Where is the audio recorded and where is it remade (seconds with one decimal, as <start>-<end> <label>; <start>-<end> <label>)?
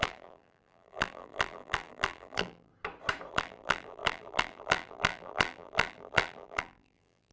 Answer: 0.0-2.7 remade; 2.7-3.3 recorded; 3.3-7.3 remade